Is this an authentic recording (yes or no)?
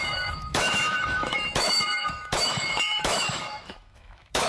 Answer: no